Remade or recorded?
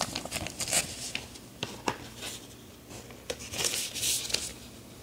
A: recorded